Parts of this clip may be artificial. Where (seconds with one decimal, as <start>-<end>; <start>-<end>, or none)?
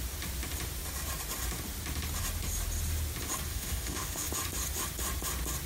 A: 3.5-4.3